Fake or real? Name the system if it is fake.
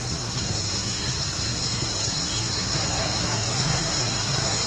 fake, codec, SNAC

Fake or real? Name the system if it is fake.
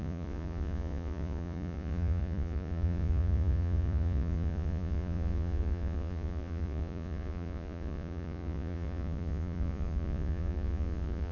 fake, vocoder, Vocos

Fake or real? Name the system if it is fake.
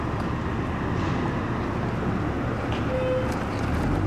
real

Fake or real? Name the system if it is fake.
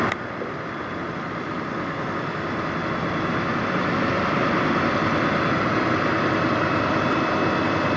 real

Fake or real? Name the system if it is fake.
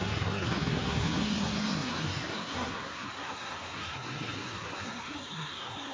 fake, codec, SNAC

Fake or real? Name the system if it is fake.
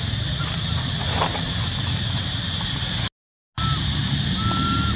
real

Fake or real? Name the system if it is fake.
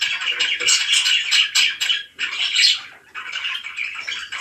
real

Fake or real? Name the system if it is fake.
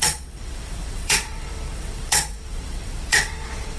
fake, vocoder, WaveNeXt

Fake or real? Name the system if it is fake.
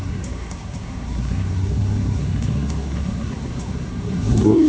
fake, codec, SNAC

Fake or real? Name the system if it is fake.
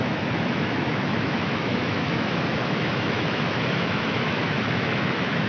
fake, autoencoder, DAC-VAE